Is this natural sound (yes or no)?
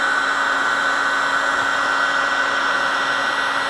yes